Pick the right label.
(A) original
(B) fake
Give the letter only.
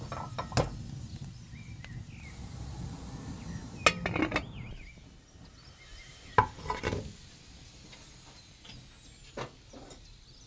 A